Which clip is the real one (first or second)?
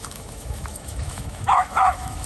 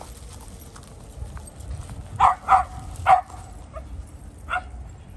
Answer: second